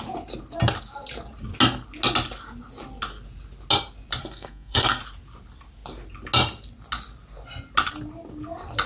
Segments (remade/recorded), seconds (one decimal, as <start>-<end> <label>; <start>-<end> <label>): 0.0-4.2 recorded; 4.2-5.0 remade; 5.0-8.9 recorded